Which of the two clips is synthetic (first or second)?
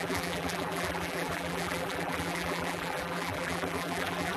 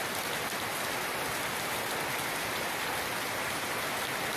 first